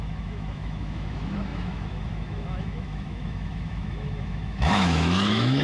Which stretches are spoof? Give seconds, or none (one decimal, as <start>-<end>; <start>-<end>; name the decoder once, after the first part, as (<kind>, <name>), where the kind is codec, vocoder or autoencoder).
0.0-5.6 (autoencoder, DAC-VAE)